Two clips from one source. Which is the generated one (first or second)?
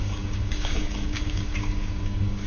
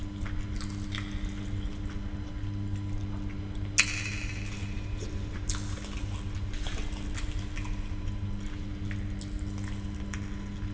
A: first